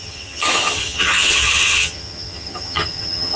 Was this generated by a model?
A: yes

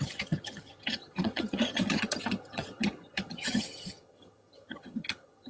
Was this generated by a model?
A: yes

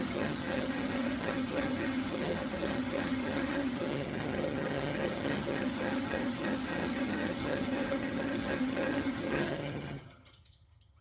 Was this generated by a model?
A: yes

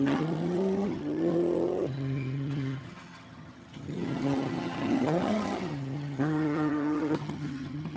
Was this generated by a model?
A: yes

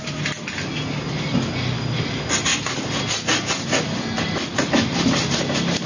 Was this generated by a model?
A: no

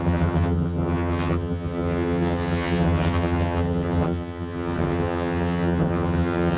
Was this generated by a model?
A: yes